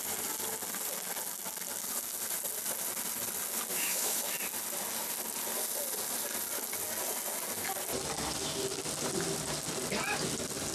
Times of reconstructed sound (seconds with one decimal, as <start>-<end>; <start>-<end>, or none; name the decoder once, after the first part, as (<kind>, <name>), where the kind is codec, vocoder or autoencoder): 3.7-4.2 (autoencoder, DAC-VAE)